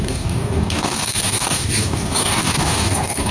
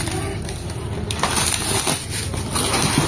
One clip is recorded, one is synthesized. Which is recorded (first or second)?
second